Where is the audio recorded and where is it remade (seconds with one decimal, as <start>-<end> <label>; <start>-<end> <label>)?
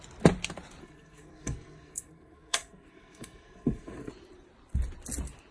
0.0-0.8 recorded; 0.8-4.1 remade; 4.1-5.5 recorded